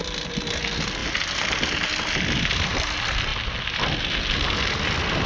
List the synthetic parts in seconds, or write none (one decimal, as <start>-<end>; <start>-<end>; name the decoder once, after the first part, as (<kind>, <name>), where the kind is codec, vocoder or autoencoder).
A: none